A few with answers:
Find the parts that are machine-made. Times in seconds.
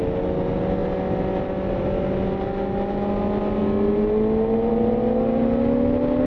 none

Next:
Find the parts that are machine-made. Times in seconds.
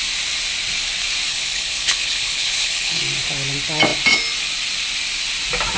1.3-3.0 (codec, HILCodec)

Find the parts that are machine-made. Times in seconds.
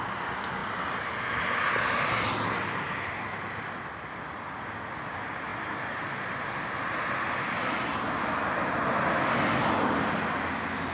0.6-1.4 (vocoder, BigVGAN v2); 3.3-4.0; 5.5-8.2